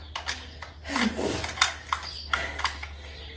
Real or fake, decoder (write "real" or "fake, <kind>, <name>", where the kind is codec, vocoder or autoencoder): real